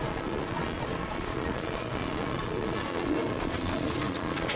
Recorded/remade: remade